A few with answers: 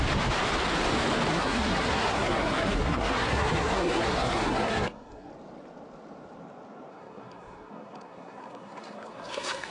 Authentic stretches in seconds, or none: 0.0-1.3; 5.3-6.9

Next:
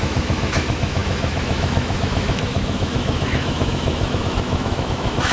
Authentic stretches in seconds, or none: none

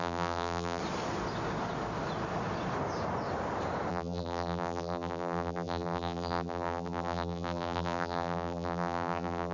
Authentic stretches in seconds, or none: 0.8-3.9

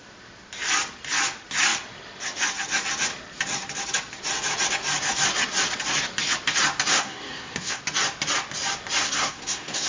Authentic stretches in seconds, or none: 0.0-6.9; 7.8-9.0

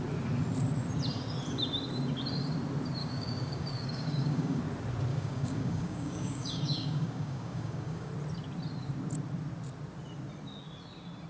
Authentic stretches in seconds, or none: 0.0-3.0; 4.6-5.1; 8.1-11.3